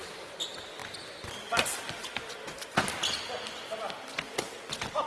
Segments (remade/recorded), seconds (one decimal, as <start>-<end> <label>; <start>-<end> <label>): 0.0-5.1 recorded